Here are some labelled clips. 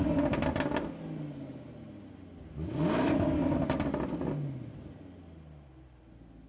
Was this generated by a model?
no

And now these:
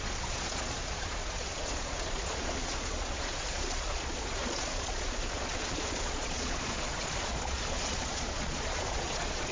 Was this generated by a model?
yes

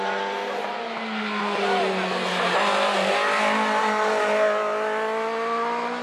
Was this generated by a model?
no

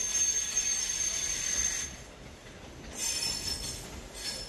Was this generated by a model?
no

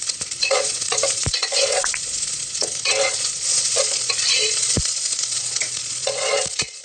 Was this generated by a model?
yes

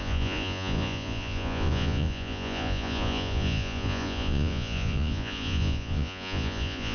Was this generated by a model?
yes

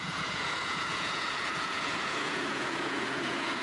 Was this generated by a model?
yes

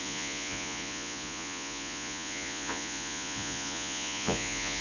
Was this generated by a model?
yes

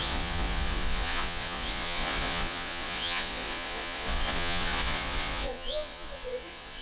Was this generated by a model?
yes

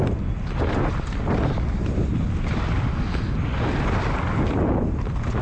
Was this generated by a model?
no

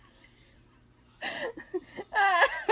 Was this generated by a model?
no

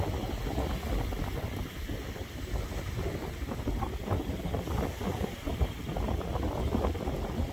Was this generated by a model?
no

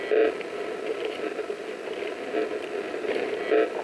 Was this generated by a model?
no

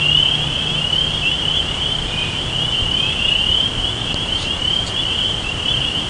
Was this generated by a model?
no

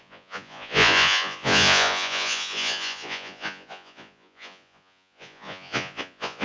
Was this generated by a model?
yes